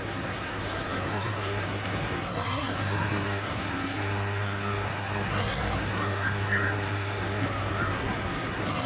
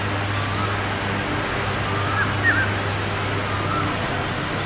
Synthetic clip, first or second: first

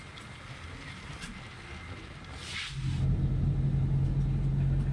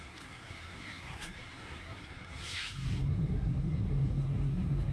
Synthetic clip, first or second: second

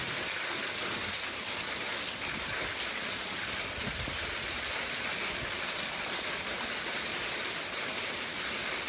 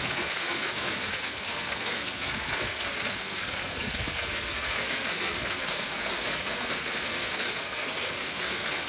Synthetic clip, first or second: second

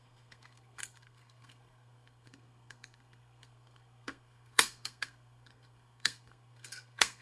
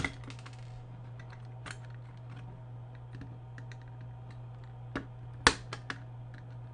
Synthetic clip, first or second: first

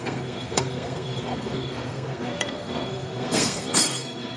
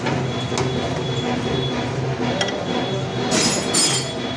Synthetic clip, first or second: first